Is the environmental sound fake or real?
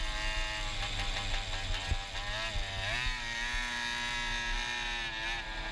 real